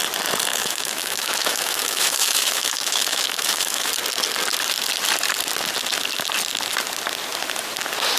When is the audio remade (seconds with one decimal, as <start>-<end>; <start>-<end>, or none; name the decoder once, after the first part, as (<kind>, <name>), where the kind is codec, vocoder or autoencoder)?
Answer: 0.5-3.9 (autoencoder, DAC-VAE)